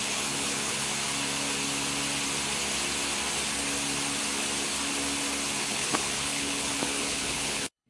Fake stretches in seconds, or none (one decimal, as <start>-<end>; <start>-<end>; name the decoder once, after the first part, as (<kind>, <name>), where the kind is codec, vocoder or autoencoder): 0.0-0.9 (codec, HILCodec); 5.6-7.9

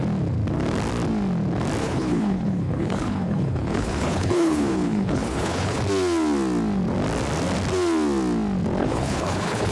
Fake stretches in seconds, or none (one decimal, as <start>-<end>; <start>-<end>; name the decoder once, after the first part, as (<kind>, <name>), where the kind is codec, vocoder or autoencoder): 1.8-5.8 (codec, HILCodec); 8.8-9.7

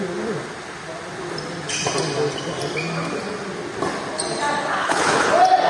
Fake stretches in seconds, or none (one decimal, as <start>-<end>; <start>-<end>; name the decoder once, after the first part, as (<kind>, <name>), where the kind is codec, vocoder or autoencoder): 4.8-5.3 (codec, HILCodec)